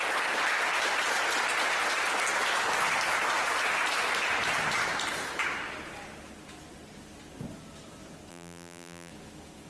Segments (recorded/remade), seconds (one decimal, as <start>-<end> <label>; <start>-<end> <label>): 0.0-8.3 recorded; 8.3-9.1 remade; 9.1-9.7 recorded